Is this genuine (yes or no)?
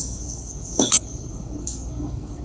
no